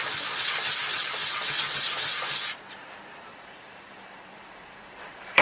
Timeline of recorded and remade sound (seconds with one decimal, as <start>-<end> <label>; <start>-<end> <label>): 0.0-3.3 recorded; 3.3-5.4 remade